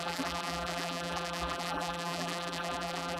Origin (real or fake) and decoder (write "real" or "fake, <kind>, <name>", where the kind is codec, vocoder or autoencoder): fake, vocoder, BigVGAN v2